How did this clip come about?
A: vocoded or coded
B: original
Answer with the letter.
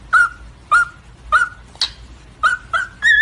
B